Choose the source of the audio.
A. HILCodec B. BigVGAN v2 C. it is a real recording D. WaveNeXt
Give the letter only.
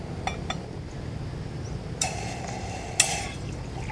C